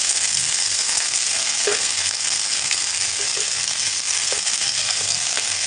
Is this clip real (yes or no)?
no